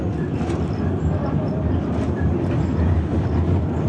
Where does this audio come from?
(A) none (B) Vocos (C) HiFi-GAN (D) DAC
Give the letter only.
A